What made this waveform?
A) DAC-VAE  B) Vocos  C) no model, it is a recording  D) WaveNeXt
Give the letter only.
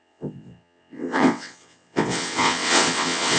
D